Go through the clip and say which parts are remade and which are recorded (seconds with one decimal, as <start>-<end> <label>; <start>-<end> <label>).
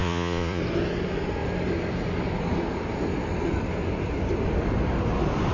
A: 0.0-0.6 remade; 0.6-5.5 recorded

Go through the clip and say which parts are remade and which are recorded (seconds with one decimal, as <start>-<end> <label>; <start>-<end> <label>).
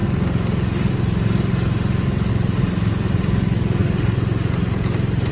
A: 0.0-5.3 recorded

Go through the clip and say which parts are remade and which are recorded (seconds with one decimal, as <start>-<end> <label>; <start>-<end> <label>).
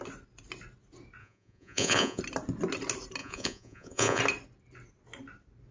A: 0.0-1.2 recorded; 1.2-2.2 remade; 2.2-3.2 recorded; 3.2-4.2 remade; 4.2-5.7 recorded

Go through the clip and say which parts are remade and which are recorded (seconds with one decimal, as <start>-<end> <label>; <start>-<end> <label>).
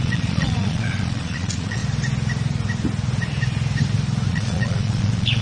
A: 0.0-1.8 remade; 1.8-4.3 recorded; 4.3-5.4 remade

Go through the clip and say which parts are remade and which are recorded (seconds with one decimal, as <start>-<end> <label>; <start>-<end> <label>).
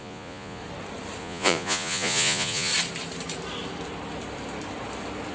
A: 0.0-0.6 remade; 0.6-1.2 recorded; 1.2-2.7 remade; 2.7-5.3 recorded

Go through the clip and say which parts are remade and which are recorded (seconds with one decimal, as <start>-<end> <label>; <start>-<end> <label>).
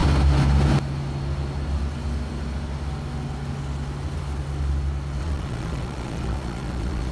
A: 0.0-5.2 recorded; 5.2-7.1 remade